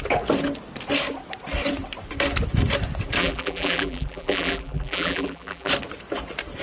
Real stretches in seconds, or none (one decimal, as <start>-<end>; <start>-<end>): 0.0-3.2; 5.7-6.6